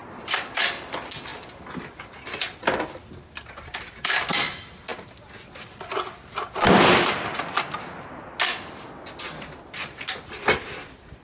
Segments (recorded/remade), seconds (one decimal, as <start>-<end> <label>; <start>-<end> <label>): 0.0-11.2 recorded

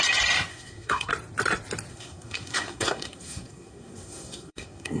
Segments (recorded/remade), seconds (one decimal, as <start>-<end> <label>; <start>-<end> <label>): 0.0-0.5 recorded; 0.5-1.1 remade; 1.1-1.9 recorded; 1.9-5.0 remade

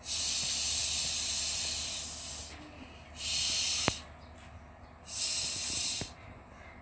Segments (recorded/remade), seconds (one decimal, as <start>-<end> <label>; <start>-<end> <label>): 0.0-6.8 recorded